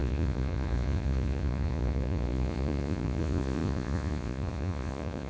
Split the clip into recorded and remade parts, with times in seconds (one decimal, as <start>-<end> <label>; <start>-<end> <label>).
0.0-5.3 remade